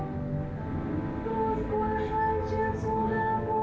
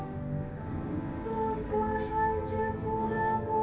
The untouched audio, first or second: first